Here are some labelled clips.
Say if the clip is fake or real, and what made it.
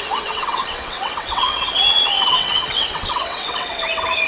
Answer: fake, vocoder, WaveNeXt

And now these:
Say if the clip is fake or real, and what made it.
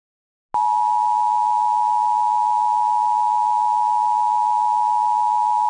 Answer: real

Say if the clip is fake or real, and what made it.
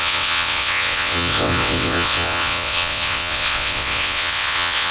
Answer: fake, vocoder, WaveNeXt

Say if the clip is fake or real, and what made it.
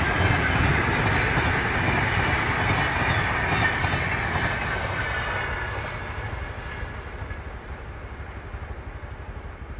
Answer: real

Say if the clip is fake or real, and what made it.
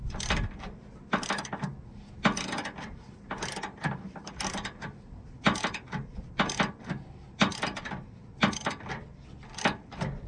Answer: real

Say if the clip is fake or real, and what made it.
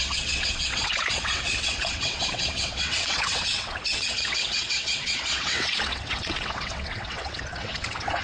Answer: fake, vocoder, WaveNeXt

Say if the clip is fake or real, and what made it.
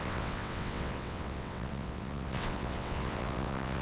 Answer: fake, vocoder, WaveNeXt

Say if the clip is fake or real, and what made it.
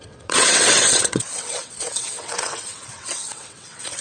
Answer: fake, vocoder, WaveNeXt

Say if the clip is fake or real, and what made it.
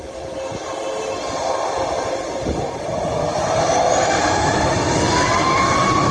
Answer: real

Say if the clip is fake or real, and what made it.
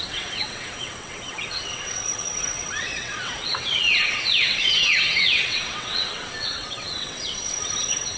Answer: fake, vocoder, WaveNeXt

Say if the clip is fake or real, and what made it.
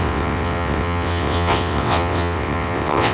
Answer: fake, vocoder, WaveNeXt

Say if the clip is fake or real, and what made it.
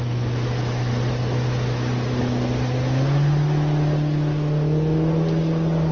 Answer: real